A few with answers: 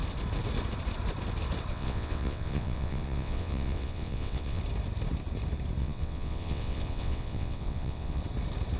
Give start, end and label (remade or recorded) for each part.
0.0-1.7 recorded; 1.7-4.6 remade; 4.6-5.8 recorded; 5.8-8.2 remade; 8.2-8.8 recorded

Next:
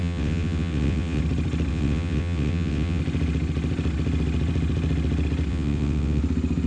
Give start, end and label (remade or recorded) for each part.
0.0-1.2 remade; 1.2-1.7 recorded; 1.7-3.0 remade; 3.0-5.5 recorded; 5.5-6.2 remade; 6.2-6.7 recorded

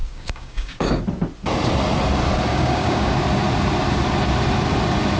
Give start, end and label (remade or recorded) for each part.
0.0-1.0 remade; 1.0-2.5 recorded; 2.5-3.1 remade; 3.1-5.2 recorded